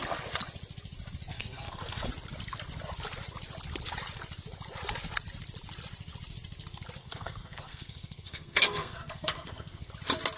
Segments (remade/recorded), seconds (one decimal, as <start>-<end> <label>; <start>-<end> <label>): 0.0-1.3 recorded; 1.3-2.1 remade; 2.1-7.0 recorded; 7.0-9.9 remade; 9.9-10.4 recorded